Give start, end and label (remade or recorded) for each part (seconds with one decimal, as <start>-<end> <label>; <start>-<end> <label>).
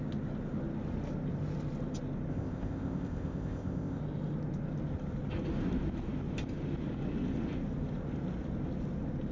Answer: 0.0-2.3 recorded; 2.3-4.0 remade; 4.0-9.3 recorded